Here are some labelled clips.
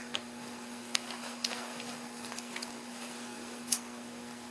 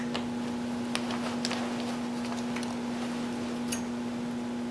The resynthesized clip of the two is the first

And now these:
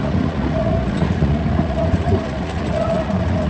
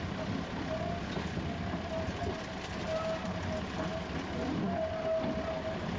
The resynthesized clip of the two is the first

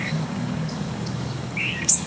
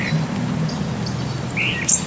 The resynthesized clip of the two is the first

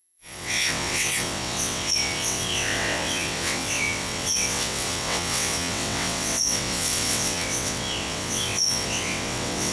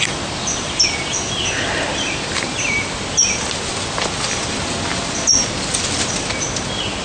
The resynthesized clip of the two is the first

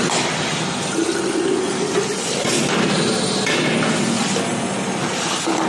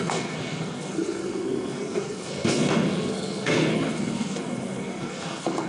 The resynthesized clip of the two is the second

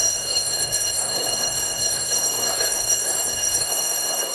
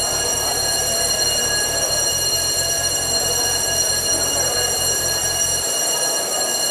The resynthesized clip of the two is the first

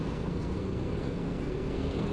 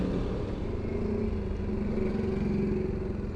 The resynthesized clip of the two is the first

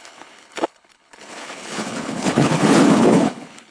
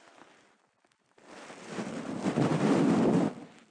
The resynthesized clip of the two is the first